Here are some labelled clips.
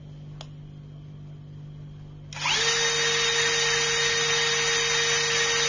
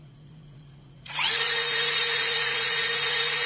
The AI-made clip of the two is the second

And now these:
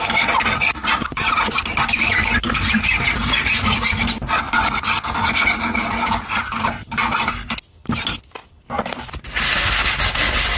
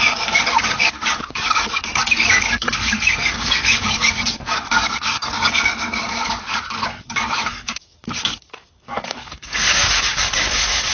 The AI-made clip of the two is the second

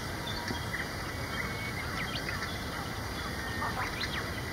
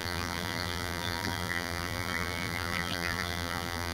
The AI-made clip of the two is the second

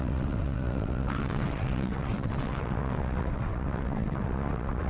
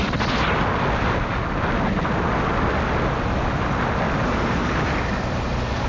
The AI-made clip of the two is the first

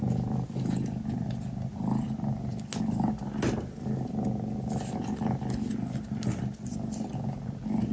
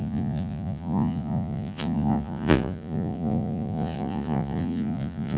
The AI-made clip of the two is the second